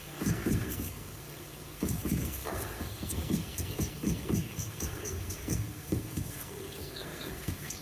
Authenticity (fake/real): fake